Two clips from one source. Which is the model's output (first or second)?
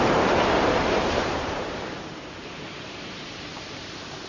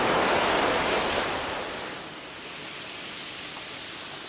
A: first